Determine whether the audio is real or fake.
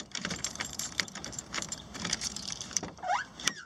fake